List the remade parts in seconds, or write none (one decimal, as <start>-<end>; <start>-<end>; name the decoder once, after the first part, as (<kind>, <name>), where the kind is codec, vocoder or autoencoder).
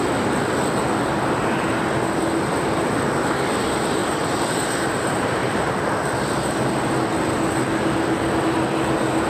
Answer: 4.0-5.7 (vocoder, BigVGAN v2)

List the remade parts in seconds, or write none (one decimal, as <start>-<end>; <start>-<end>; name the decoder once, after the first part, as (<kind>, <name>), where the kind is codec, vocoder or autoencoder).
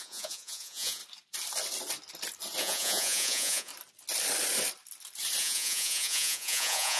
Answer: 0.0-1.0 (vocoder, Vocos); 2.6-3.7; 5.4-7.0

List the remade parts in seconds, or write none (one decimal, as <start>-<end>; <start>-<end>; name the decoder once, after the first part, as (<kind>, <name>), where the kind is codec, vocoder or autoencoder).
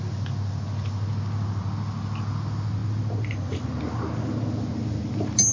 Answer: none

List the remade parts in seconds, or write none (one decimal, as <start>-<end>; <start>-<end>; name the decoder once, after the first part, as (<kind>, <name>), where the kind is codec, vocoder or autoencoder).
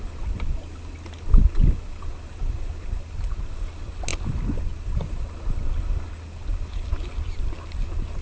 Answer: none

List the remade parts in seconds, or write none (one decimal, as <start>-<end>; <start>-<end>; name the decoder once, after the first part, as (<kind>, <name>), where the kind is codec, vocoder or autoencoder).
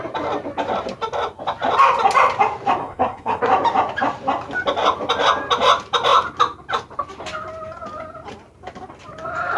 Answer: 2.8-3.4 (codec, SNAC)